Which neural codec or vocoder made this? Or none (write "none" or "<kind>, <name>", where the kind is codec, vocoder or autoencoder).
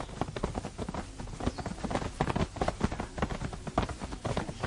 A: none